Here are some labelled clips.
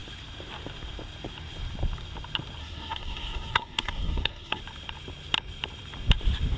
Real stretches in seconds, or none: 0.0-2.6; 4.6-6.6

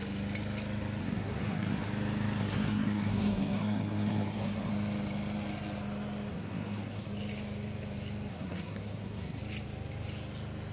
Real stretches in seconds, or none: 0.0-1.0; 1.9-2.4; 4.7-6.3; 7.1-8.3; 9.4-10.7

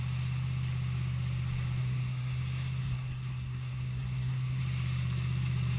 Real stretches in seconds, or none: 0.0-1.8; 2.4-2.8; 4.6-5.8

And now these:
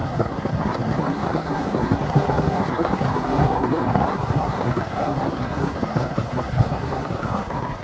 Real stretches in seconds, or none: none